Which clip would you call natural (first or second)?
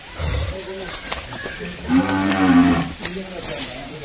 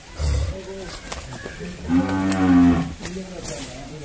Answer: second